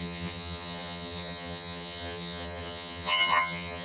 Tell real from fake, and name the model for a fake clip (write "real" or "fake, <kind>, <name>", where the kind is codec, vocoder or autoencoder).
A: fake, vocoder, HiFi-GAN